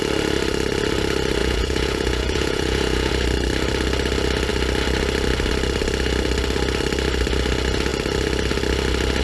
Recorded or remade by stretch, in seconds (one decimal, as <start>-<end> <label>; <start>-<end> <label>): 0.0-1.4 recorded; 1.4-3.1 remade; 3.1-9.2 recorded